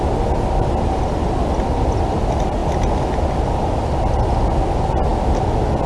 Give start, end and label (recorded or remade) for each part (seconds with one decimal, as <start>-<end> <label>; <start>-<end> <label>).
0.0-5.9 recorded